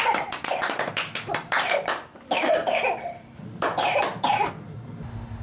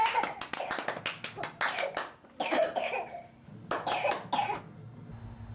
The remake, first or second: first